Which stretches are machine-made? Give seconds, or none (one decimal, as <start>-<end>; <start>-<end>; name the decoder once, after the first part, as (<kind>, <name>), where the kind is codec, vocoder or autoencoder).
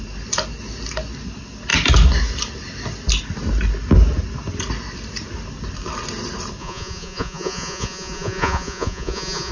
6.6-9.5 (vocoder, Vocos)